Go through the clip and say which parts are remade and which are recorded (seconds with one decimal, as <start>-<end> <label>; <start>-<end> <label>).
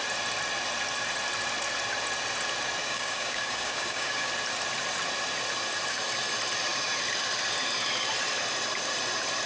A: 0.0-2.8 recorded; 2.8-4.3 remade; 4.3-9.5 recorded